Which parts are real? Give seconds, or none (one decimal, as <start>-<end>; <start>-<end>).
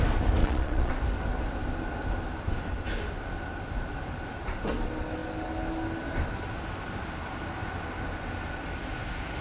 0.0-0.4; 0.9-9.4